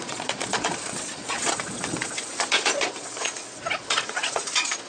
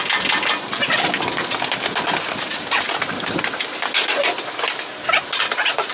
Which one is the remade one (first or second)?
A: first